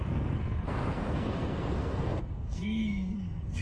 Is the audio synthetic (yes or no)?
yes